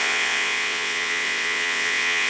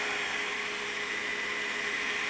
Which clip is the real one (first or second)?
second